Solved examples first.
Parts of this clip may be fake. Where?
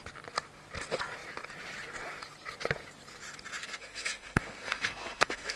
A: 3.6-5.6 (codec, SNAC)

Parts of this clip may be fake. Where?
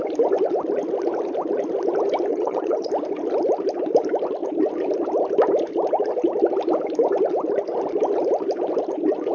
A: 2.3-2.9 (vocoder, HiFi-GAN)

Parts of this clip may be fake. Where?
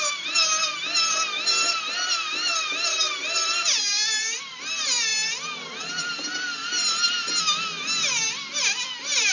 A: none